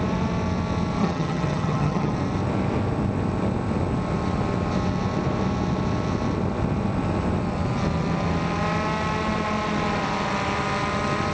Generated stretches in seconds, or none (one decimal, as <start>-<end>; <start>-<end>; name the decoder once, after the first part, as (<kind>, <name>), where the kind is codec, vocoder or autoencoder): 1.0-2.1 (vocoder, HiFi-GAN)